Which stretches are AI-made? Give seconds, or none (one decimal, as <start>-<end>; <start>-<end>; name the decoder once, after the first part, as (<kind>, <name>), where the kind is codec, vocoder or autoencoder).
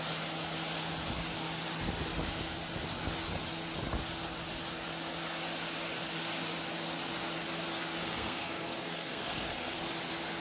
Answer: 8.0-9.8 (codec, SNAC)